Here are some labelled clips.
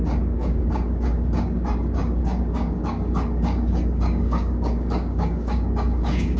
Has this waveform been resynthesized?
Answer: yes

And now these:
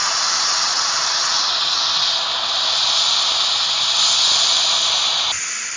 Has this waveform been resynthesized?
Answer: no